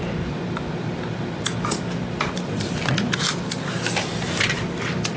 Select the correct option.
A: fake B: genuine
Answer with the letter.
B